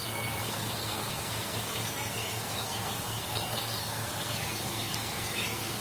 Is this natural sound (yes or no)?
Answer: no